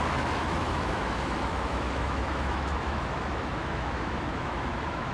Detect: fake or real fake